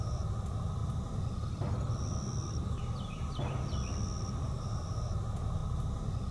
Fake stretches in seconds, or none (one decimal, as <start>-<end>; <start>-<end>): none